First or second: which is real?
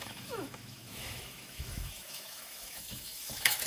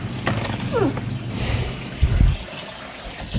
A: second